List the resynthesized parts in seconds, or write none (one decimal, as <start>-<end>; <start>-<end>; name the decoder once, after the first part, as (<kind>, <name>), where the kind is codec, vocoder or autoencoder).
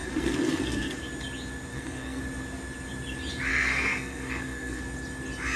0.0-1.0 (codec, SNAC); 1.7-2.2; 3.5-4.8